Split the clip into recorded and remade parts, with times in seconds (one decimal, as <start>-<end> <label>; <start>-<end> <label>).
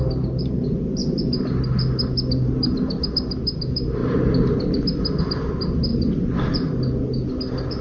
0.0-7.8 recorded